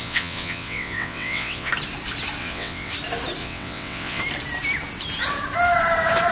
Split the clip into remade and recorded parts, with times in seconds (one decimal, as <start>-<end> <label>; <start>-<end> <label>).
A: 0.0-1.7 remade; 1.7-2.4 recorded; 2.4-2.9 remade; 2.9-3.4 recorded; 3.4-4.2 remade; 4.2-6.3 recorded